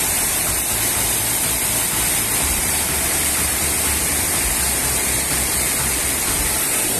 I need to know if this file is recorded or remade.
remade